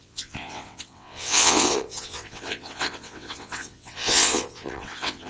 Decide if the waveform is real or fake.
fake